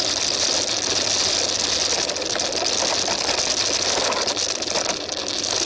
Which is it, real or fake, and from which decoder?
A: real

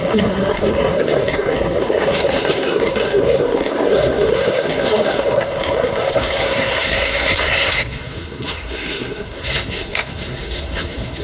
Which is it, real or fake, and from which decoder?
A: fake, codec, SNAC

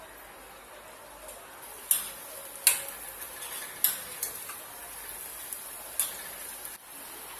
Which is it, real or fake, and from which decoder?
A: real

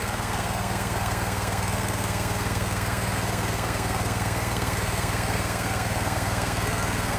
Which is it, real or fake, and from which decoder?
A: fake, codec, SNAC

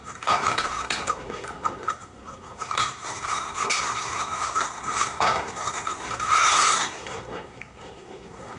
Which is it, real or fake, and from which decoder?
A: fake, codec, SNAC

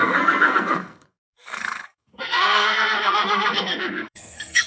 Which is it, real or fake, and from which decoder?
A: fake, codec, SNAC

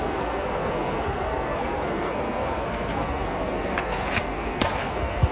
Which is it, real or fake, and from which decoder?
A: fake, codec, SNAC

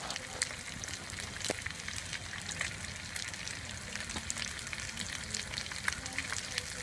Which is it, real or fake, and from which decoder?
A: real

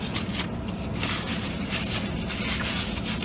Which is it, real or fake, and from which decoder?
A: real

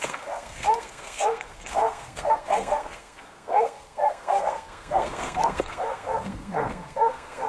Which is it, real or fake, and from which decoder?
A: fake, codec, SNAC